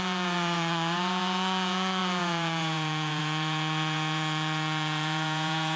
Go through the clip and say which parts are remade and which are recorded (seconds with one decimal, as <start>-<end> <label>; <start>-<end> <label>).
0.0-5.8 remade